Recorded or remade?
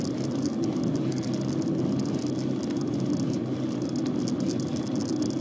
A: recorded